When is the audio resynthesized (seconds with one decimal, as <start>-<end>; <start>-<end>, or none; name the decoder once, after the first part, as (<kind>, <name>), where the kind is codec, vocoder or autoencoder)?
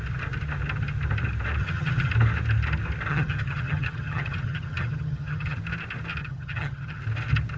1.6-2.1 (vocoder, HiFi-GAN); 3.1-5.6; 6.2-7.0